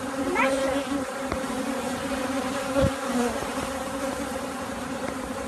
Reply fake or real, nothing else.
fake